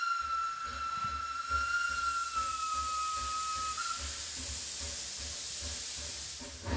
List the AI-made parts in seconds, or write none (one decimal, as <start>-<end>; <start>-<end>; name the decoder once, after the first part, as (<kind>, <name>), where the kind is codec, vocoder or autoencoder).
none